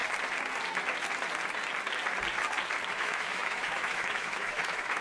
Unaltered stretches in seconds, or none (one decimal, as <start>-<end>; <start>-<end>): 0.0-3.0